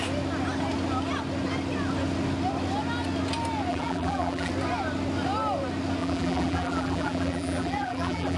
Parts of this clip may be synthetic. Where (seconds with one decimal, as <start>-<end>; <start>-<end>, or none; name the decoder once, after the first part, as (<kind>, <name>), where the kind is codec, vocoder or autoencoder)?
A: 3.7-4.5 (vocoder, BigVGAN v2); 6.0-8.4